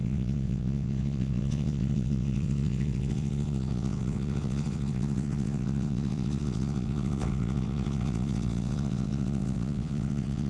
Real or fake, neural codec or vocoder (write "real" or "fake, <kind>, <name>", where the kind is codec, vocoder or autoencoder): fake, vocoder, WaveNeXt